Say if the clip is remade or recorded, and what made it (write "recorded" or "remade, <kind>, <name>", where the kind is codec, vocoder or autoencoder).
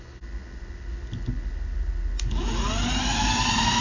recorded